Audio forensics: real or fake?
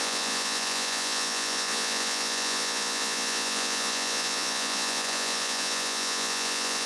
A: fake